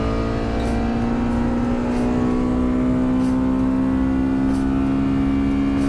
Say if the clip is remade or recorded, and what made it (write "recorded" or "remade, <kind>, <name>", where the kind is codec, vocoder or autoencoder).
recorded